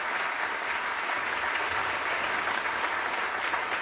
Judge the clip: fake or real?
real